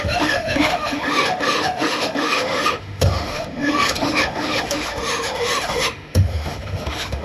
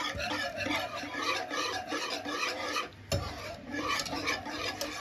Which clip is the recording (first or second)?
second